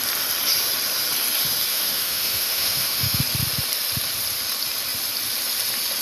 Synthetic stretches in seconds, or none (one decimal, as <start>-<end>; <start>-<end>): 1.7-3.2

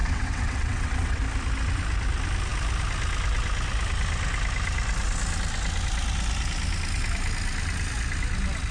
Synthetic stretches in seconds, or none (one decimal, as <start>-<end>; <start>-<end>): 0.0-1.2

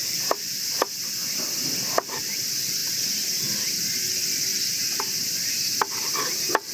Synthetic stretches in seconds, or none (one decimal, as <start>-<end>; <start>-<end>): 0.0-4.5; 5.0-6.7